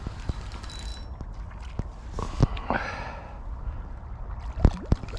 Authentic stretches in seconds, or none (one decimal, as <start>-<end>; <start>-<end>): 0.0-5.2